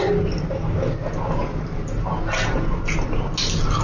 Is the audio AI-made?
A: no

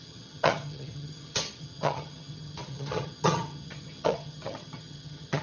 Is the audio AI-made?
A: yes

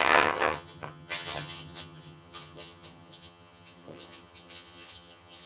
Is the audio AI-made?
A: yes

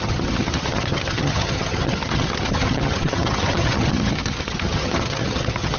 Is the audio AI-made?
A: yes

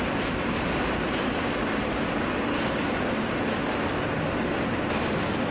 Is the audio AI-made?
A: no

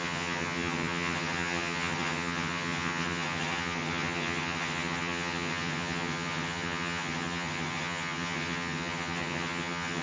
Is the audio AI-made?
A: yes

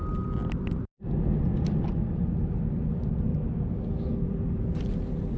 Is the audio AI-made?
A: no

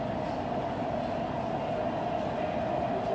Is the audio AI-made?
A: no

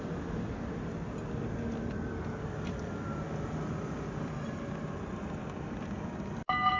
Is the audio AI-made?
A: no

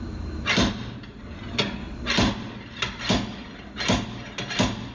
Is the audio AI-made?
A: no